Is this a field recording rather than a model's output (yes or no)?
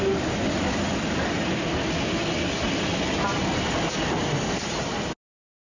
yes